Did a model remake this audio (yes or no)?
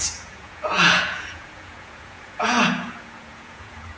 yes